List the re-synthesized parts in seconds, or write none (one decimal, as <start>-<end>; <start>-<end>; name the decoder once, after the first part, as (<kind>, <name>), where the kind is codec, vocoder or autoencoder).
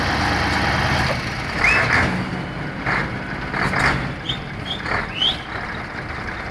none